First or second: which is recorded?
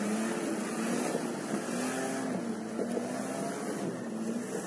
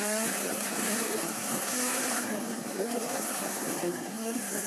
first